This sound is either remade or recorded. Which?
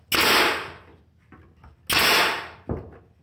recorded